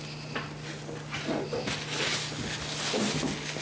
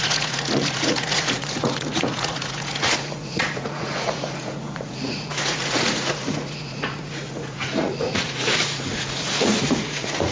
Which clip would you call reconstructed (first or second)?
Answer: second